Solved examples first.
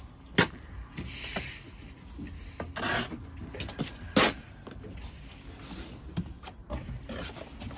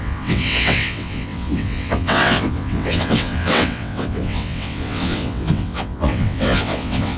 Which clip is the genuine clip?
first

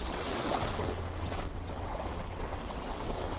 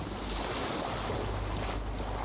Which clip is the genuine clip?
second